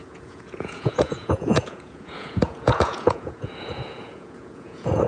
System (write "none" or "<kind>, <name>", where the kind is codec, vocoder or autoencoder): vocoder, Vocos